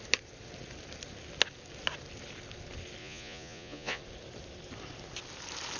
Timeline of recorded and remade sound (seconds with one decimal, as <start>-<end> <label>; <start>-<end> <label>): 0.0-3.0 recorded; 3.0-4.0 remade; 4.0-5.8 recorded